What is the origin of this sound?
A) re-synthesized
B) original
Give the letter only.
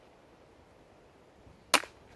B